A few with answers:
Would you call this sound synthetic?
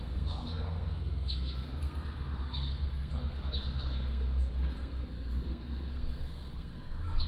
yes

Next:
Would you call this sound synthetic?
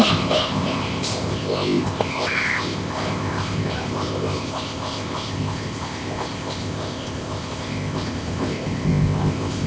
yes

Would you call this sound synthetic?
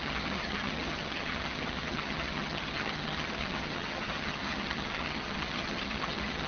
yes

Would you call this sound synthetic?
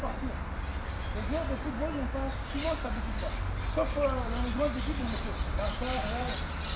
no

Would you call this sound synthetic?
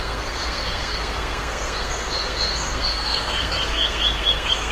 yes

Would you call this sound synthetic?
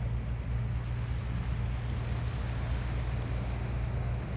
no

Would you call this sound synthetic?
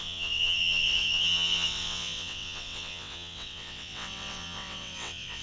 yes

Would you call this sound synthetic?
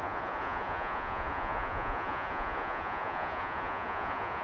yes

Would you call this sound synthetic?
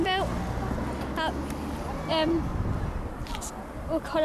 no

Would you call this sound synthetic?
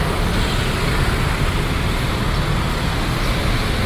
no